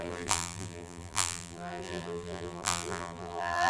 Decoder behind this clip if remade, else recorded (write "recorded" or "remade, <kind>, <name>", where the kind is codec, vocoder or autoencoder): remade, vocoder, BigVGAN v2